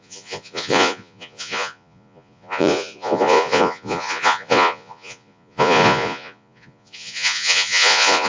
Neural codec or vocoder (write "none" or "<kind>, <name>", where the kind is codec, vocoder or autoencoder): vocoder, Vocos